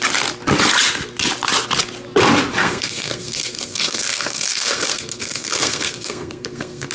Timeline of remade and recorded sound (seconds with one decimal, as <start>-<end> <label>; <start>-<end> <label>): 0.0-2.6 recorded; 2.6-6.9 remade